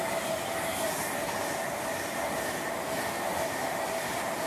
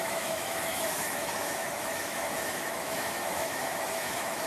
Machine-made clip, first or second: second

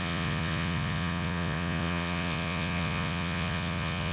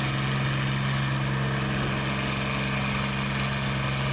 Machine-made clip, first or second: first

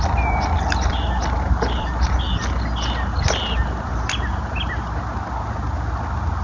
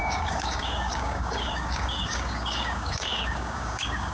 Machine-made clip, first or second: second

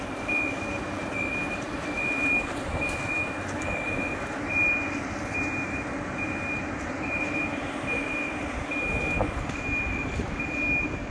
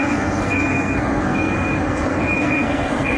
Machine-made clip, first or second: second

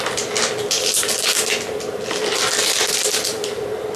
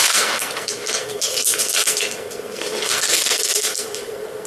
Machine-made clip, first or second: second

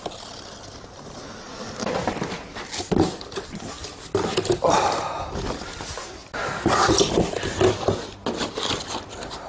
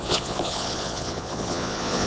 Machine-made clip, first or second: second